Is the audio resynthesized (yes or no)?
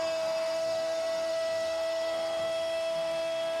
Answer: yes